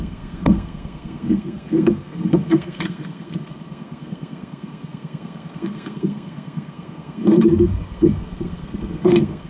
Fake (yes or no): yes